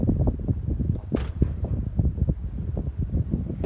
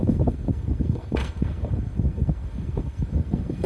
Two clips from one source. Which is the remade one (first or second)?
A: second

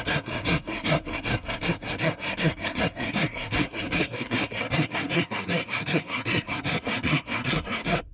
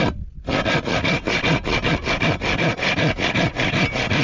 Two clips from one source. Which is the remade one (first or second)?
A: first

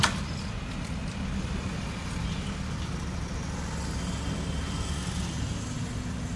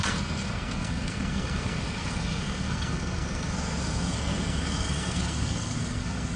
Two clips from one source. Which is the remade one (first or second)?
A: second